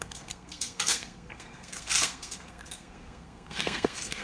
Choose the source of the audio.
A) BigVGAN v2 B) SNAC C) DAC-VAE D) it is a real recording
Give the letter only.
B